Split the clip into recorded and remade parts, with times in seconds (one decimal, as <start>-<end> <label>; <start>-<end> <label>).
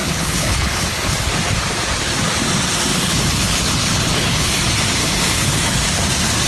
0.0-1.3 remade; 1.3-2.9 recorded; 2.9-4.6 remade; 4.6-5.0 recorded; 5.0-5.6 remade; 5.6-6.5 recorded